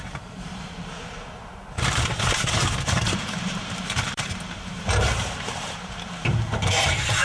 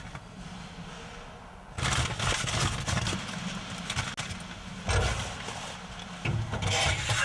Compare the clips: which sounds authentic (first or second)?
second